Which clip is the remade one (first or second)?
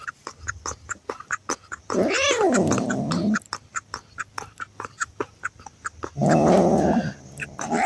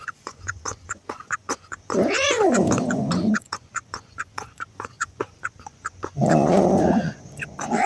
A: second